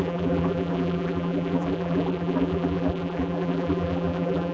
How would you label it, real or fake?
fake